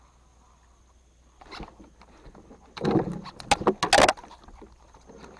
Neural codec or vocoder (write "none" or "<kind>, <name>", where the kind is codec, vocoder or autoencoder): none